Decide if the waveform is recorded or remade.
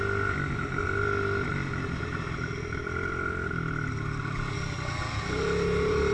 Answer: recorded